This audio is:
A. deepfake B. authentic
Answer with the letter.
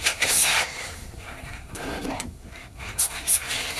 A